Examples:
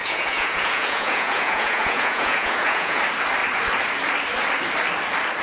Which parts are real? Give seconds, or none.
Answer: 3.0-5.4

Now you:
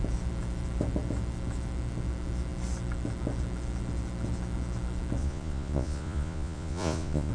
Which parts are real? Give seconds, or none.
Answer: 0.0-5.2

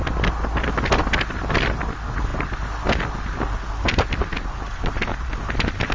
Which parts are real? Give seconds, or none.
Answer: 0.0-5.9

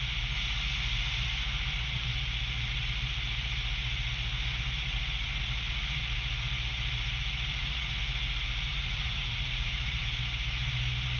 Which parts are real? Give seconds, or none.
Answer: 0.0-7.5; 8.0-8.7; 10.0-11.2